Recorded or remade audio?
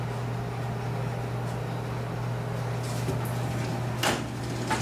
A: recorded